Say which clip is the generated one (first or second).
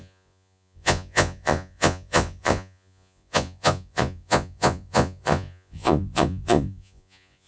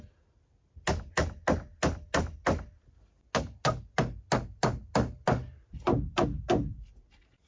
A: first